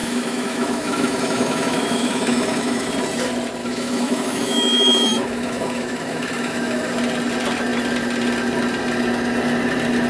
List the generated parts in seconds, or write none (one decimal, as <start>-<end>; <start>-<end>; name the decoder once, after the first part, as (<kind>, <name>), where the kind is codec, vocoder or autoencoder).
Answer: 0.0-2.9 (autoencoder, DAC-VAE); 3.6-6.9